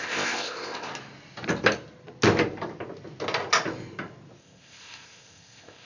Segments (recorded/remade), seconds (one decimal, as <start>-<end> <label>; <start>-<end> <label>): 0.0-0.9 remade; 0.9-4.4 recorded; 4.4-5.9 remade